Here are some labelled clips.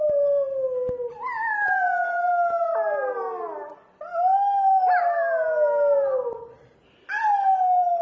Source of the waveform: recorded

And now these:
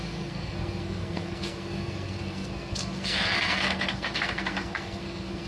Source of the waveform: remade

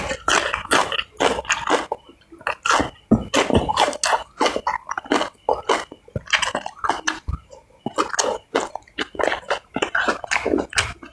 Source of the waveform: recorded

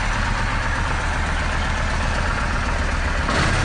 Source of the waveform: recorded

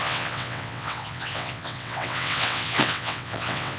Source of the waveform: remade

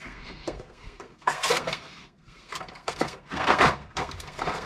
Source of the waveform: remade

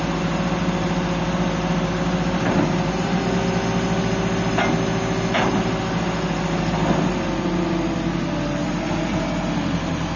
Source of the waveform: recorded